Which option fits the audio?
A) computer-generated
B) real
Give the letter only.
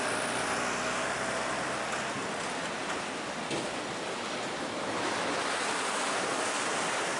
B